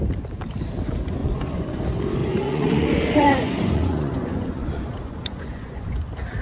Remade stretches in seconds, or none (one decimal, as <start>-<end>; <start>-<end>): 1.2-1.8; 2.2-6.0